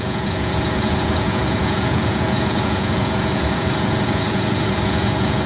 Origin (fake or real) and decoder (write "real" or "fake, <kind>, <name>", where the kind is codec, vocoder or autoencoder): fake, vocoder, Vocos